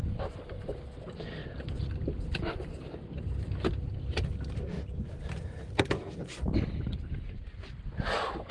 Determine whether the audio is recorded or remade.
recorded